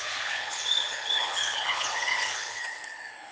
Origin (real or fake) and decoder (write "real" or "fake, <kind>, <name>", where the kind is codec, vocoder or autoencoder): fake, codec, HILCodec